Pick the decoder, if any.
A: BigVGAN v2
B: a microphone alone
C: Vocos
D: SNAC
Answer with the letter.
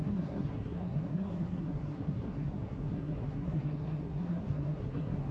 D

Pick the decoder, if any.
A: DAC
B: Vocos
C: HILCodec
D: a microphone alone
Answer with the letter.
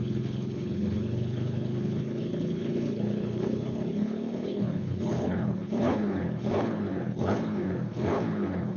C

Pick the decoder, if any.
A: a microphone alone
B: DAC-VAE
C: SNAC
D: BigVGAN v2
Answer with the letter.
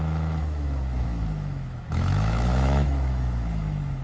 B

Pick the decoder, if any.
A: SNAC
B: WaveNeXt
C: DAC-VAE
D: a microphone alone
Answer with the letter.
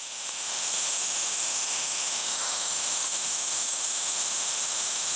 C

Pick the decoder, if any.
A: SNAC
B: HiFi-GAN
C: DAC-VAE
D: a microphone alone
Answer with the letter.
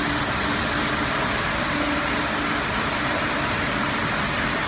D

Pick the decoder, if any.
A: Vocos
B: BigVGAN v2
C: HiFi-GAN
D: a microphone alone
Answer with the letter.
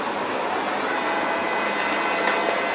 D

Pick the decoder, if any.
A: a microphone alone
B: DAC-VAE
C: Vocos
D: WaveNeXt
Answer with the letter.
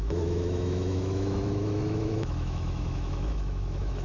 B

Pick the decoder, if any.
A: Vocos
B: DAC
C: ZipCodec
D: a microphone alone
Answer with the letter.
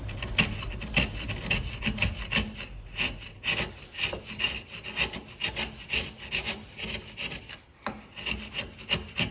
D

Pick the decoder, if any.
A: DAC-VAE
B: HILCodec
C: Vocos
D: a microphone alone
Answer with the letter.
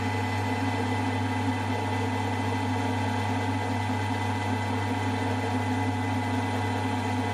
D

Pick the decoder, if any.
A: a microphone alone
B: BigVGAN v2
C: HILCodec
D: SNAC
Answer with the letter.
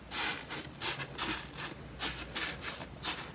A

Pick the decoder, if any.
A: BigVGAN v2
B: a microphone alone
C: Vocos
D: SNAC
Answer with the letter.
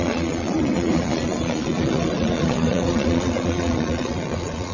C